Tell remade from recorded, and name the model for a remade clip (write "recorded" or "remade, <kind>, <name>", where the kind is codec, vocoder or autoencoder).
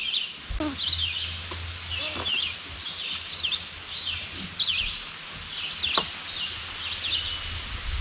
recorded